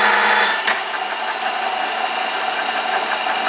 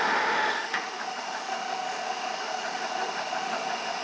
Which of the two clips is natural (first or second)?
first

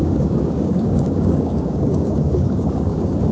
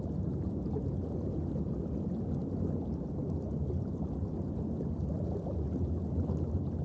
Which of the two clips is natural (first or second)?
second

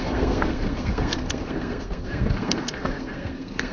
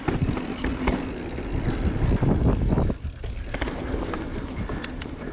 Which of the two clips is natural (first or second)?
second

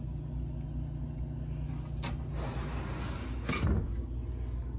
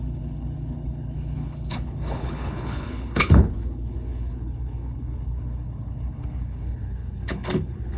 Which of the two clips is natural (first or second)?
first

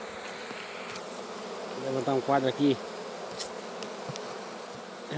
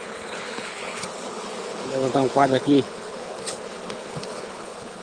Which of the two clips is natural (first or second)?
first